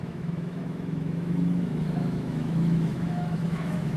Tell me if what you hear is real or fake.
fake